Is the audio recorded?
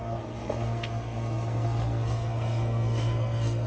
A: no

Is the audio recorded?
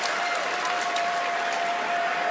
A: yes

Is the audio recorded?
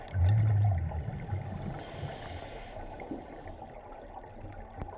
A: yes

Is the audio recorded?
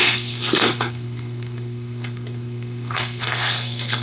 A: no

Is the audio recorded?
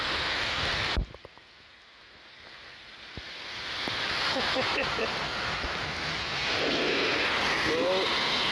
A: yes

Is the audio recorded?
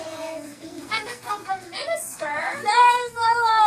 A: no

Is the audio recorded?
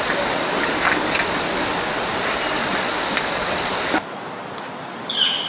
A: yes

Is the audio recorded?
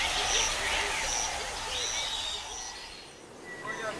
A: yes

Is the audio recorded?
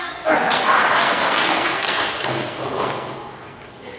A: no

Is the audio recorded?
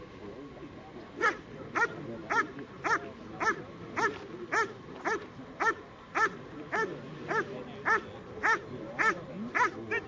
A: yes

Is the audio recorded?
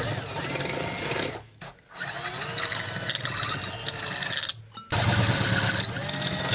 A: yes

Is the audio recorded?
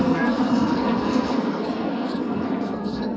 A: no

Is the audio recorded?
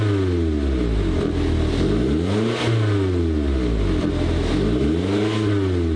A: yes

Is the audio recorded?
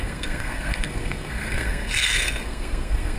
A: no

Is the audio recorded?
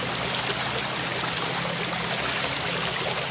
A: yes